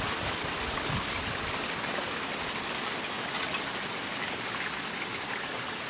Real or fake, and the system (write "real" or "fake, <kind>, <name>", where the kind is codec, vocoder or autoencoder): real